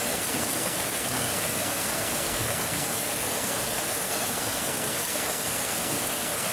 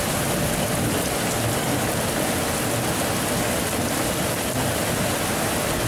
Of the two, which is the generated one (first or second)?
first